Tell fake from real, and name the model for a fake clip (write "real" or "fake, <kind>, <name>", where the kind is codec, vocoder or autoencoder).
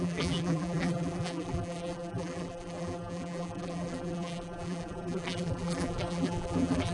fake, vocoder, BigVGAN v2